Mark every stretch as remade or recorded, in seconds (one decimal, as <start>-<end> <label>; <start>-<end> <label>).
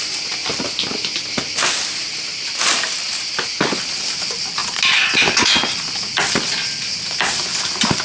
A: 0.0-8.0 recorded